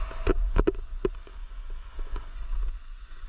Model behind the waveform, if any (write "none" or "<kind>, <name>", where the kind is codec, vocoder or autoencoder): vocoder, Vocos